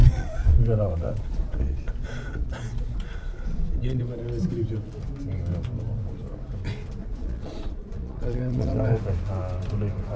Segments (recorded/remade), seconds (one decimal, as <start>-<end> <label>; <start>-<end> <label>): 0.0-4.0 remade; 4.0-7.0 recorded; 7.0-8.8 remade; 8.8-10.2 recorded